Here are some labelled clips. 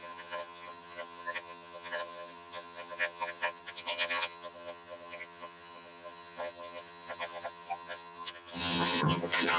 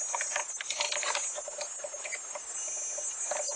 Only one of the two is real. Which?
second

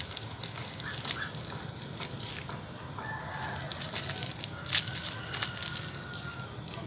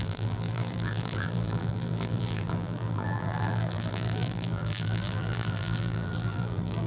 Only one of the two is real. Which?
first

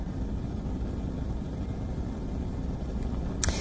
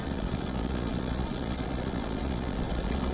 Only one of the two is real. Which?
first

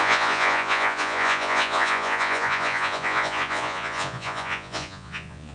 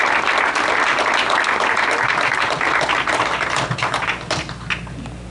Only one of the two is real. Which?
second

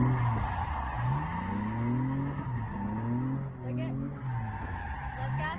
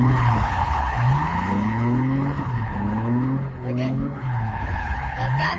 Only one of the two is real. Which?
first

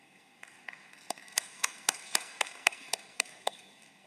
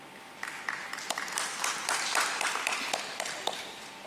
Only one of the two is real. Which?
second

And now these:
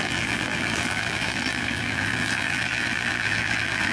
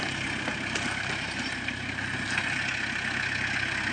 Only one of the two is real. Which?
second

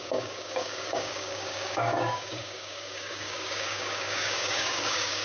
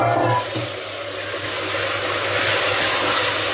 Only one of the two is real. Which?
second